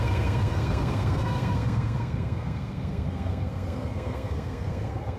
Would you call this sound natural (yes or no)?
no